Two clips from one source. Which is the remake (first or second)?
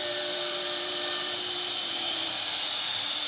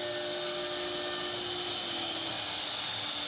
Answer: first